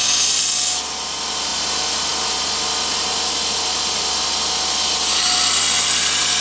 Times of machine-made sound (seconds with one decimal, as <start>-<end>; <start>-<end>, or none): none